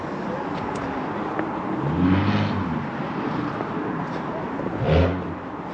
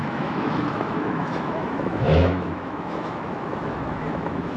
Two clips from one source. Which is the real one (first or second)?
first